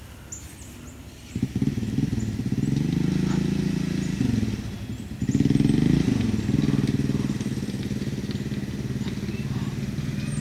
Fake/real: real